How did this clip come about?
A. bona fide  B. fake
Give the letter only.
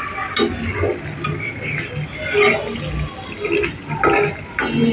A